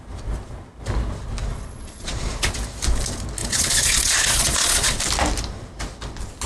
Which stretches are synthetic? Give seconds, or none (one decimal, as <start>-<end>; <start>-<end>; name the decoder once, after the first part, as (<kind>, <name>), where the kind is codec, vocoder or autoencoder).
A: 1.5-2.5 (vocoder, Vocos); 3.4-5.0